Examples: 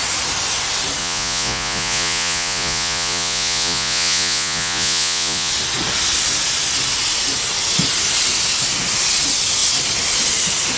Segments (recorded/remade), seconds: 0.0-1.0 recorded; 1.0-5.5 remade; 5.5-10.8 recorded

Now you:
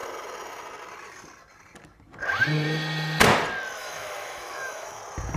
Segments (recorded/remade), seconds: 0.0-3.8 recorded; 3.8-5.0 remade; 5.0-5.4 recorded

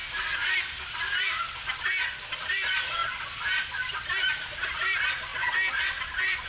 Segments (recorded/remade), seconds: 0.0-2.3 recorded; 2.3-6.5 remade